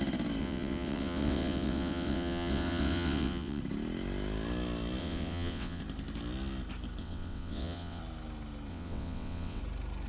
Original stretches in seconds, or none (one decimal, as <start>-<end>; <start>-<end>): 0.0-0.4; 3.6-5.0; 5.8-7.0; 8.0-8.7; 9.6-10.1